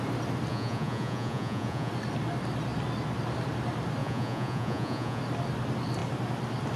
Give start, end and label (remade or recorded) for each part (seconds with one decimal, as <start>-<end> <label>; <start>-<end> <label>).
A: 0.0-0.5 recorded; 0.5-1.9 remade; 1.9-4.0 recorded; 4.0-5.2 remade; 5.2-6.8 recorded